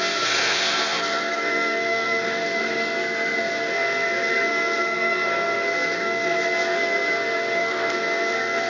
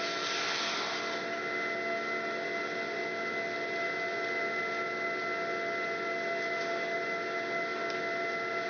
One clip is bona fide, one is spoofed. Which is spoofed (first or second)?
first